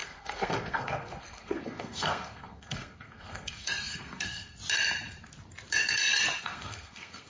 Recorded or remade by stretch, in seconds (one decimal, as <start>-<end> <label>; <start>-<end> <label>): 0.0-4.6 remade; 4.6-6.4 recorded; 6.4-7.3 remade